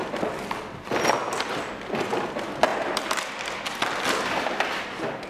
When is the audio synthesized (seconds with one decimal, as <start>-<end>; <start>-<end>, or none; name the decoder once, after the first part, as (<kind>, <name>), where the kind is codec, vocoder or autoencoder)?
2.7-3.2 (vocoder, BigVGAN v2)